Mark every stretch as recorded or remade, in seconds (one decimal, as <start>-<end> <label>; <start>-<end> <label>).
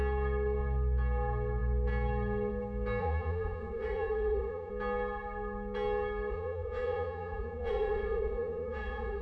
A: 0.0-3.0 recorded; 3.0-4.7 remade; 4.7-6.3 recorded; 6.3-9.2 remade